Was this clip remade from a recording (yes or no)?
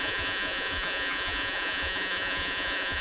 yes